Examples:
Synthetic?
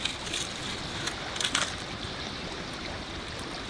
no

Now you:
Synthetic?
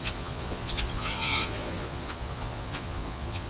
yes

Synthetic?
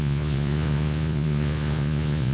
yes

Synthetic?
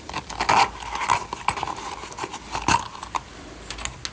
no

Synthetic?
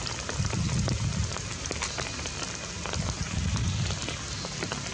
no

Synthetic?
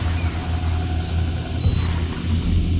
no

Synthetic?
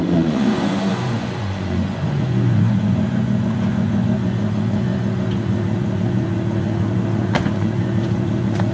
yes